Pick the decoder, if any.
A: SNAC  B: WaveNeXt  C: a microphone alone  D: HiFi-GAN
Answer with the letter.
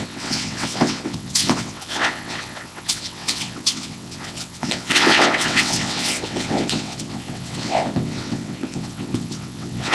B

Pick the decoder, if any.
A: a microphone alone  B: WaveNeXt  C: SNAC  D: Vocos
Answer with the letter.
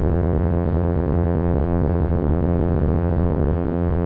B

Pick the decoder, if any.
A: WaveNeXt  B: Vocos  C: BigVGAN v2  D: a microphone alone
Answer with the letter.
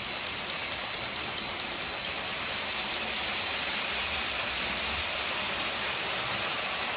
D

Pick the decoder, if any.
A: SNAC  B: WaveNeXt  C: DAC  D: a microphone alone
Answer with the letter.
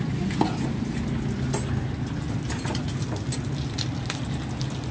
D